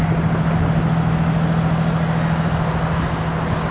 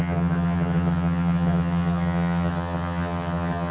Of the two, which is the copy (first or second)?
second